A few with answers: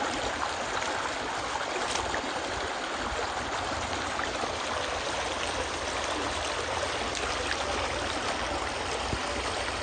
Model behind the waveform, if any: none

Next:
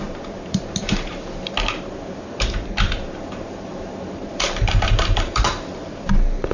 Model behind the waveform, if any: vocoder, BigVGAN v2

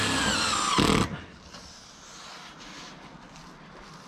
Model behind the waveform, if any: none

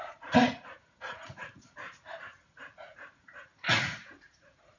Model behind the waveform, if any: vocoder, Vocos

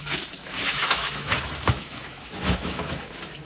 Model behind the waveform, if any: autoencoder, DAC-VAE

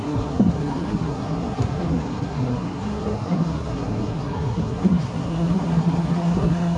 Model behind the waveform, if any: codec, SNAC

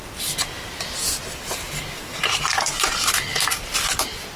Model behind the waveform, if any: none